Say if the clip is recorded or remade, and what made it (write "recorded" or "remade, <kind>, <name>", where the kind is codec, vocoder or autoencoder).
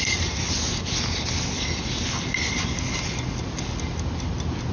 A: recorded